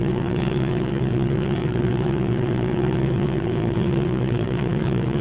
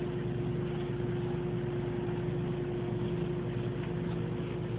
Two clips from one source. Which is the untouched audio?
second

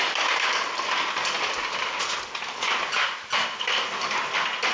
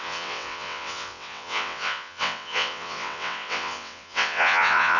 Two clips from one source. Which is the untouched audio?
first